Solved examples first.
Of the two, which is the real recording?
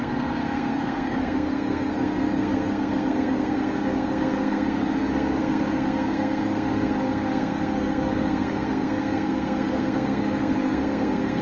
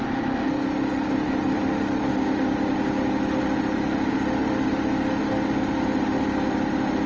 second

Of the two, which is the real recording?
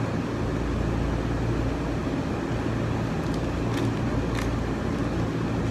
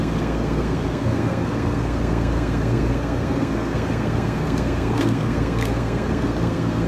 first